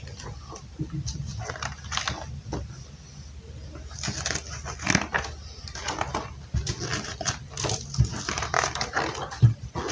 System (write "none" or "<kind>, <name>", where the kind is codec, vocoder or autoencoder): none